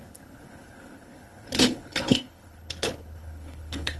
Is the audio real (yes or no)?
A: no